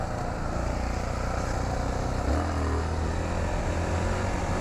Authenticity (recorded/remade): recorded